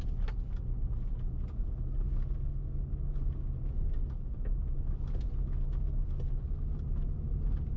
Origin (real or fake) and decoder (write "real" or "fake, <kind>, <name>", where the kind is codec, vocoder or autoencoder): real